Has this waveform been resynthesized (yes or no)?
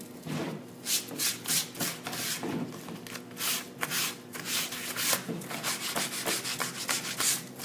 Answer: no